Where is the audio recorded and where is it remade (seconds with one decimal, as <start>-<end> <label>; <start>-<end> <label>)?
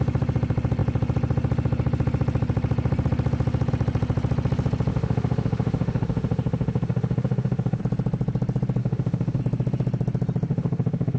0.0-4.9 recorded; 4.9-7.8 remade; 7.8-8.8 recorded; 8.8-9.4 remade; 9.4-10.5 recorded; 10.5-11.2 remade